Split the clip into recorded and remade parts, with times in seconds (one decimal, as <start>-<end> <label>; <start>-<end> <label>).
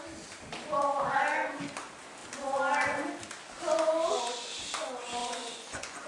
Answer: 0.0-5.2 recorded; 5.2-6.1 remade